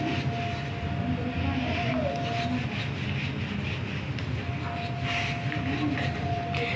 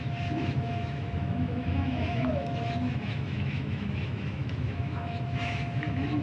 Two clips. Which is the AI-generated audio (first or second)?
second